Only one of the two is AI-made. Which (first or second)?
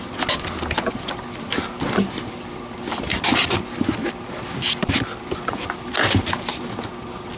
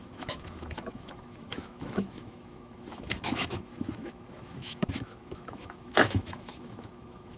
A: second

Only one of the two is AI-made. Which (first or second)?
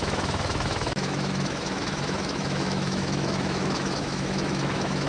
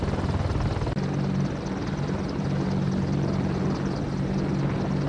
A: first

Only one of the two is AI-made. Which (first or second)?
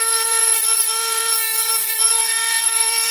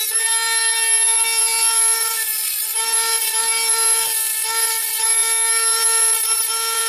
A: first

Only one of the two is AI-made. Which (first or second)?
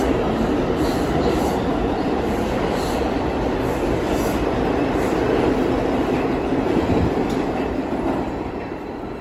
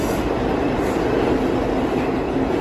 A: first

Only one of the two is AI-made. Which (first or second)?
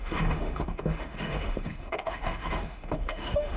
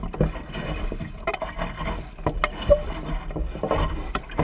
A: first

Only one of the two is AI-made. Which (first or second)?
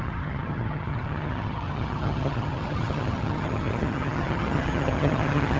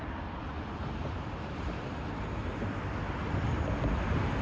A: first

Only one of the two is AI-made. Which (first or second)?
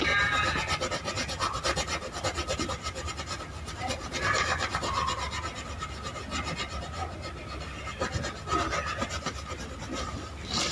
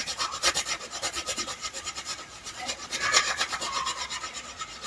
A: second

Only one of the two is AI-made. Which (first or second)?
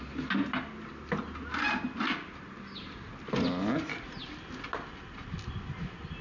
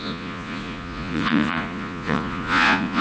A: second